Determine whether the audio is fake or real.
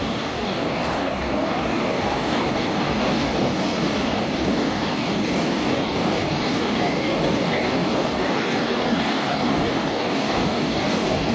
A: fake